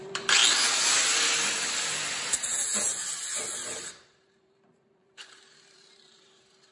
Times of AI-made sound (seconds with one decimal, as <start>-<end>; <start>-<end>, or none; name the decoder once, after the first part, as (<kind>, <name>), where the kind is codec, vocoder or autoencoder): 0.0-0.4 (vocoder, BigVGAN v2); 2.3-6.7